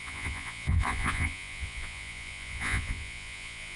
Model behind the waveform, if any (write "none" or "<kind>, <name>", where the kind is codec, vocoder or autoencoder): vocoder, Vocos